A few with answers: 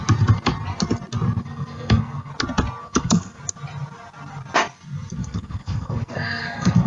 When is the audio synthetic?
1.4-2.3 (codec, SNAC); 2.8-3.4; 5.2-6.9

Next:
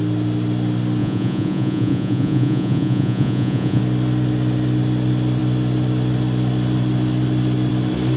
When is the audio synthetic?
1.0-3.8 (vocoder, Vocos)